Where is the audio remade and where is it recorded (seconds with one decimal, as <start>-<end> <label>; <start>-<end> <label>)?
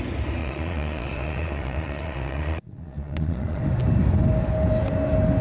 0.0-0.4 recorded; 0.4-3.6 remade; 3.6-5.4 recorded